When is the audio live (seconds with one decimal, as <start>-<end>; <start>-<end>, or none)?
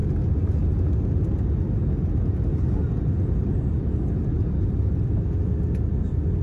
0.0-6.4